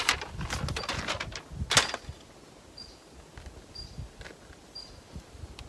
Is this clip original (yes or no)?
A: yes